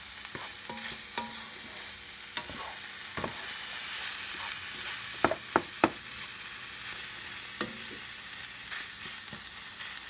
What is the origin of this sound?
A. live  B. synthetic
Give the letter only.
A